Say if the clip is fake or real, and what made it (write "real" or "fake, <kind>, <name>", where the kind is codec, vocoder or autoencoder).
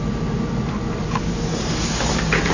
real